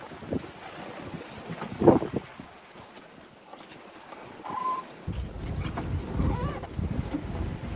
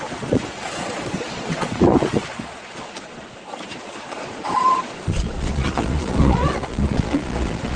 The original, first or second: first